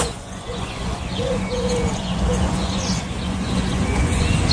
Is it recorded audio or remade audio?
remade